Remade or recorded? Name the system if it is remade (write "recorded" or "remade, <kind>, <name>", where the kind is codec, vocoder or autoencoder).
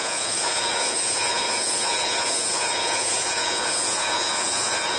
remade, vocoder, Vocos